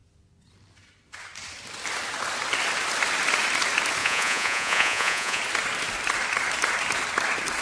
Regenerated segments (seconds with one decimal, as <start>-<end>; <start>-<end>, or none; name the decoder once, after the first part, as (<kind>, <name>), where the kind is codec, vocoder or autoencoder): 4.0-5.4 (vocoder, Vocos)